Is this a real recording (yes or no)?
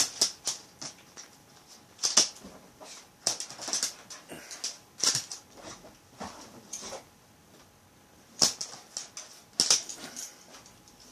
yes